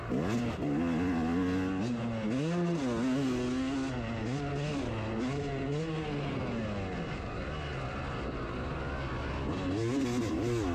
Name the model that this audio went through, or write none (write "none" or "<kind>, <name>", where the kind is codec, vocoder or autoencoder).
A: none